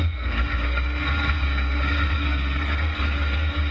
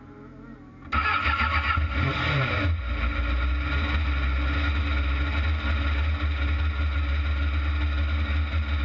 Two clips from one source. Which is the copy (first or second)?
first